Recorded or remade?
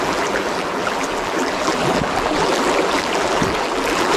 remade